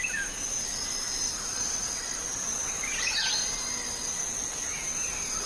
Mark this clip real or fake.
real